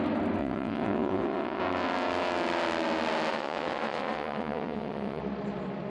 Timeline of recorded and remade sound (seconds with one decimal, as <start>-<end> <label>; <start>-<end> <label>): 0.0-0.4 recorded; 0.4-1.6 remade; 1.6-3.3 recorded; 3.3-5.2 remade; 5.2-5.9 recorded